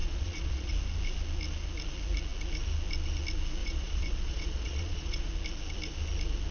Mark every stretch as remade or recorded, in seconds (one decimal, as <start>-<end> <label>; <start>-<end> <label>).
0.0-0.7 remade; 0.7-3.6 recorded; 3.6-5.3 remade; 5.3-6.5 recorded